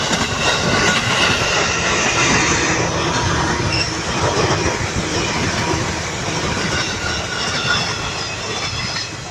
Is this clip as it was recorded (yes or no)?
yes